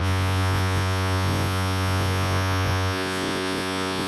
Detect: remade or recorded remade